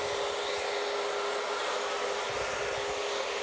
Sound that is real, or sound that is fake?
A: real